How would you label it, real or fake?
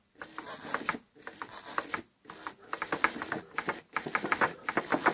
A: real